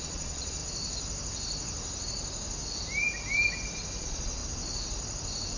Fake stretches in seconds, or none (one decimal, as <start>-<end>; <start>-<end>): 0.0-0.6; 4.0-4.4